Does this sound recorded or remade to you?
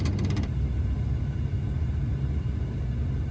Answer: recorded